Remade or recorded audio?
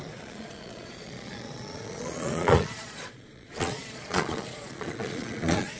remade